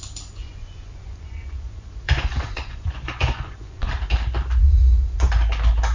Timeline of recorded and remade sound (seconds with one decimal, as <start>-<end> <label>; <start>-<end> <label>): 0.0-0.4 recorded; 0.4-3.9 remade; 3.9-4.6 recorded; 4.6-5.3 remade; 5.3-5.9 recorded